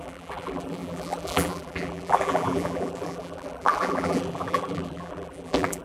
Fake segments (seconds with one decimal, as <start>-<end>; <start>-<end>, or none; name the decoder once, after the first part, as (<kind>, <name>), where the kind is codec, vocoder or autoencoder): 0.0-5.8 (vocoder, BigVGAN v2)

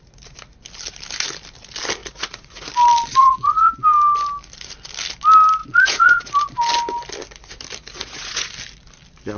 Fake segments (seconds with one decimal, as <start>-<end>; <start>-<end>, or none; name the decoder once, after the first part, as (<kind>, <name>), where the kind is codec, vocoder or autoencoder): 2.0-2.7 (vocoder, Vocos); 3.2-3.7; 5.6-6.3; 7.9-8.5

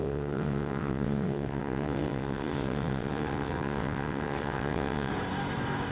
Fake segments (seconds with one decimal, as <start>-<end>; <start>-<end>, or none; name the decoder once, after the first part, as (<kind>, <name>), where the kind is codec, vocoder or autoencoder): 0.0-5.1 (vocoder, WaveNeXt)